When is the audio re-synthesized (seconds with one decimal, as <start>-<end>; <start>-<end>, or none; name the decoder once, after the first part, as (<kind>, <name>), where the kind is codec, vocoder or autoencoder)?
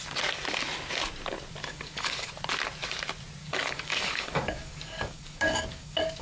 1.6-2.3 (codec, DAC); 3.4-6.2